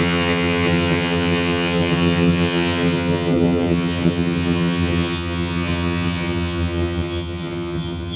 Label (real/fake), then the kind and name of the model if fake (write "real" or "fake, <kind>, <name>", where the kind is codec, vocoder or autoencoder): fake, vocoder, HiFi-GAN